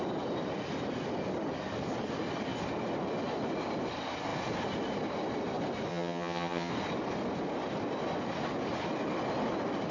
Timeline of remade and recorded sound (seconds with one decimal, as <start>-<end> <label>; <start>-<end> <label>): 0.0-5.9 recorded; 5.9-6.7 remade; 6.7-9.9 recorded